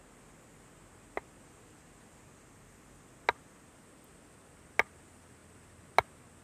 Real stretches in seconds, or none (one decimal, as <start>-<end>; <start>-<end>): 0.0-6.4